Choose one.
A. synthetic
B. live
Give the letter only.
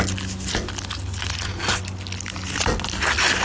B